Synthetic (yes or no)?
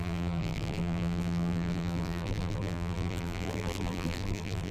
yes